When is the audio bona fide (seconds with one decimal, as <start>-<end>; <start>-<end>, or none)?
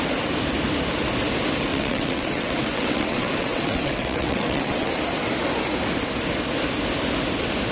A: 0.0-1.7; 4.9-7.7